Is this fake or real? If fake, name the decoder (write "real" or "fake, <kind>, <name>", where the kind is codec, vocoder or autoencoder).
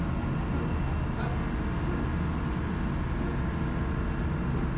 real